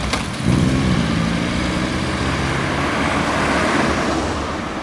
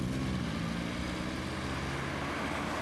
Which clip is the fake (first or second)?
first